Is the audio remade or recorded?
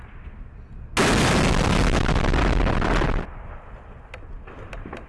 recorded